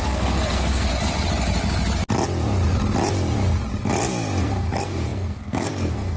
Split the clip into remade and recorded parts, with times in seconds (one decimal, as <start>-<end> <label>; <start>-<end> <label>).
0.0-0.9 remade; 0.9-4.4 recorded; 4.4-6.2 remade